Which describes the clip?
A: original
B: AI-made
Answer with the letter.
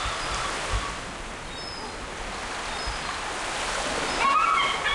A